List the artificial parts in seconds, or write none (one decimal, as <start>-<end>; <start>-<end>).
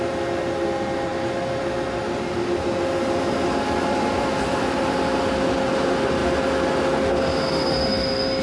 none